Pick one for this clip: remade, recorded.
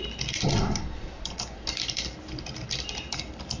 remade